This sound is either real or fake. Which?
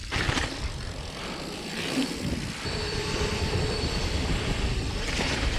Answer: fake